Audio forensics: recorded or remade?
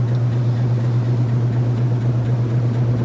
recorded